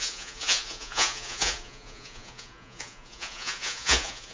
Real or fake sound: fake